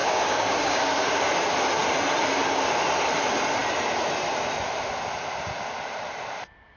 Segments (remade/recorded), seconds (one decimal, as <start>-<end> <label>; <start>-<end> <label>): 0.0-1.2 remade; 1.2-6.8 recorded